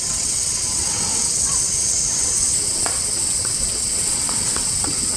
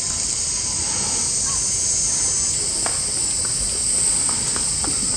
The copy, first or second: first